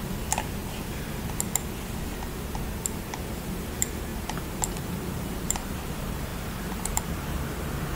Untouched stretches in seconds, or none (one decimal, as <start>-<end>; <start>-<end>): 0.6-3.3